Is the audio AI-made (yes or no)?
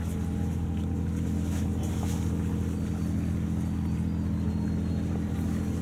no